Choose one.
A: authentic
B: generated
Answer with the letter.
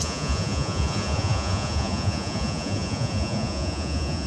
B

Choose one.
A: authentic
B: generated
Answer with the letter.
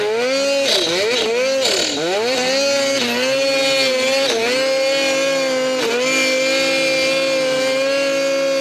A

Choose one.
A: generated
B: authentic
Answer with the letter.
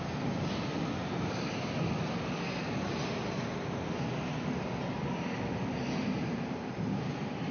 B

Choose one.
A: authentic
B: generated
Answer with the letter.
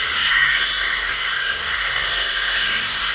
B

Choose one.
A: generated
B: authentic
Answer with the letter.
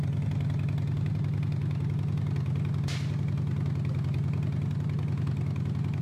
B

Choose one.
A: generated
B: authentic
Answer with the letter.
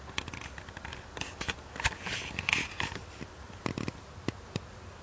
B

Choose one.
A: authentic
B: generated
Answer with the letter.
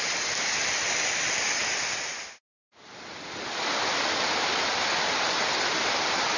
A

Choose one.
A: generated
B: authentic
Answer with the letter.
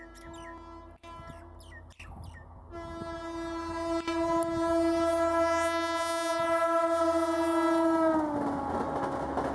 B